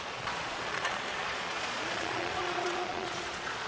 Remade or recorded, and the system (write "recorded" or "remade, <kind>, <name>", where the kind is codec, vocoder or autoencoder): remade, vocoder, Vocos